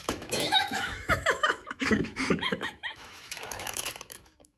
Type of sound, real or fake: fake